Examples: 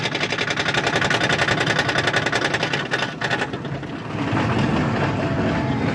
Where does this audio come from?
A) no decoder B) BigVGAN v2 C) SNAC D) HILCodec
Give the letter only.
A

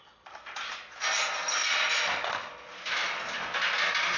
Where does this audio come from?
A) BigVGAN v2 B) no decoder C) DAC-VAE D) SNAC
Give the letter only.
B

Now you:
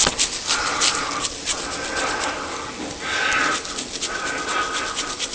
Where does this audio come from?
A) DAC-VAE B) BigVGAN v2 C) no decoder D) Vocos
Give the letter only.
B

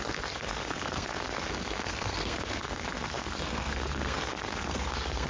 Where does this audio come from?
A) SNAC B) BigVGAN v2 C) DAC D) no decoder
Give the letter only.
A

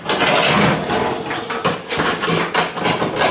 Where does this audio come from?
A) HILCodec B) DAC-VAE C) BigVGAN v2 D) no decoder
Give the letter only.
D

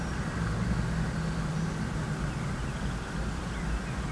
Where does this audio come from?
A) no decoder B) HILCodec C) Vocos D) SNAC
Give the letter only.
A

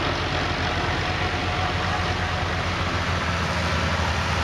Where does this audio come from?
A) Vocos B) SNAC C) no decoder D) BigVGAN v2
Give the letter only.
C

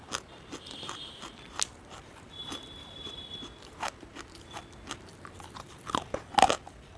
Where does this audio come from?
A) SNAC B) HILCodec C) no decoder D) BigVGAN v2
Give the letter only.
C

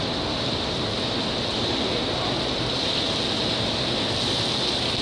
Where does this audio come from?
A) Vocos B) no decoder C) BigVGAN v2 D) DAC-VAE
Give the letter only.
B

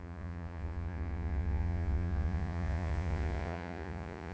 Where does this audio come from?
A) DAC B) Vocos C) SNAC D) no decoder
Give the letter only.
B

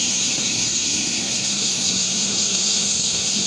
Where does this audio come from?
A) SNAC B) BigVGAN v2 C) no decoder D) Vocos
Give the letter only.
A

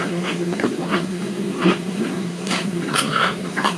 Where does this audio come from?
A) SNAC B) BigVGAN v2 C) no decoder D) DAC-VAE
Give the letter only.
A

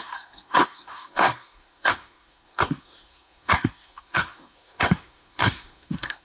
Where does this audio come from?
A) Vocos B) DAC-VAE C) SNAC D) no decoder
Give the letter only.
C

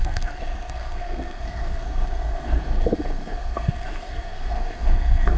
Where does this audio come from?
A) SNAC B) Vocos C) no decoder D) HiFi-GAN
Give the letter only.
A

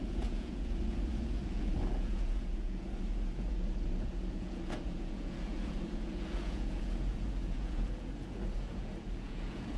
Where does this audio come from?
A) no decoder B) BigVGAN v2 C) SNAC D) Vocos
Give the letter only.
D